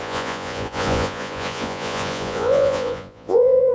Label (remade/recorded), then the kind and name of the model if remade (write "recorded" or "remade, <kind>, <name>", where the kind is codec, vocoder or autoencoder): remade, vocoder, Vocos